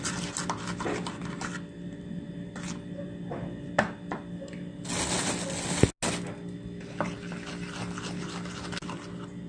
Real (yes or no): yes